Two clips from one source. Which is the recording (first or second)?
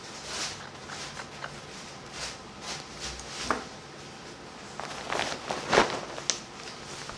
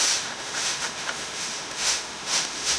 first